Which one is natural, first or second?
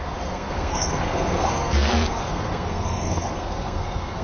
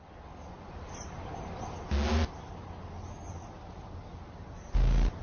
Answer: second